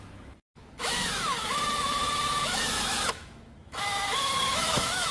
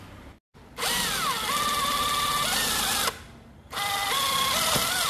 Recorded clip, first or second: second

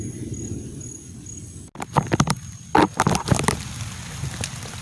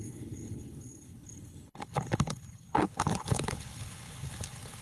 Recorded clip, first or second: first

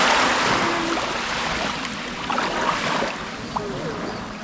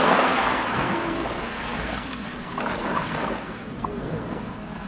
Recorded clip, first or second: first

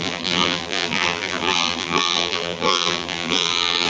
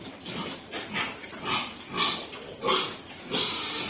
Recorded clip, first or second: second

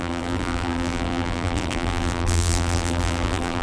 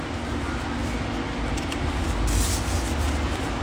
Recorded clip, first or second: second